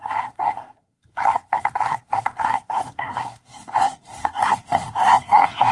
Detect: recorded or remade remade